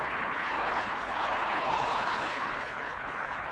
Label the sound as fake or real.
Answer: fake